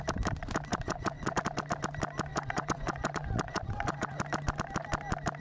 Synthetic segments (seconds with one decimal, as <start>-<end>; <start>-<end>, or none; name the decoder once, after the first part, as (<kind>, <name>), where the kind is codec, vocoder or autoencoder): 0.7-1.4 (vocoder, WaveNeXt); 2.3-4.2